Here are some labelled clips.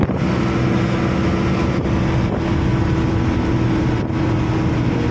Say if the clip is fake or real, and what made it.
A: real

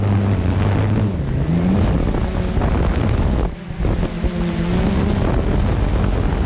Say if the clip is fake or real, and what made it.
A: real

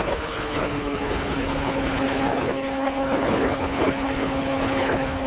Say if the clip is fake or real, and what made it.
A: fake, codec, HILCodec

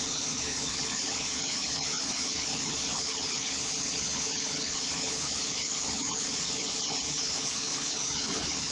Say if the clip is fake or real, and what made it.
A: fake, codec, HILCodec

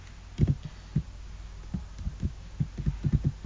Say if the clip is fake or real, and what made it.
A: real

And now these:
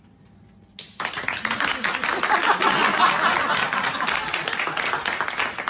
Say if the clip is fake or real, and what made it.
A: real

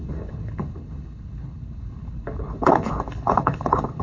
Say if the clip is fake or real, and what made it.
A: fake, codec, HILCodec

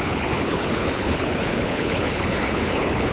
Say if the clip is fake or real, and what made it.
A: fake, codec, HILCodec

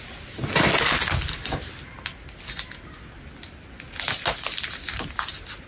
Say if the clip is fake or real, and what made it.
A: real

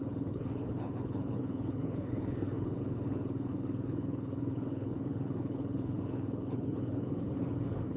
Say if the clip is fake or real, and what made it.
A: fake, codec, HILCodec